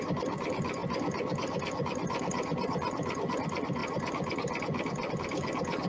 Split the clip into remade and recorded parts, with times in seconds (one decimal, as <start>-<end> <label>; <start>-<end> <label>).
0.0-3.8 remade; 3.8-5.1 recorded; 5.1-5.9 remade